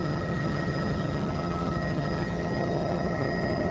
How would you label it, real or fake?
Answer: fake